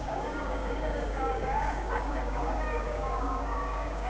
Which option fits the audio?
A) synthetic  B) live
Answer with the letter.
A